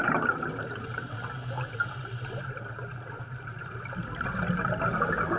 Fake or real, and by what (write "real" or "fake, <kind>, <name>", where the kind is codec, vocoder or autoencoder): real